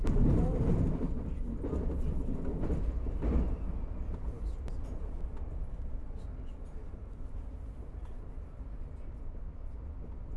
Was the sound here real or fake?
real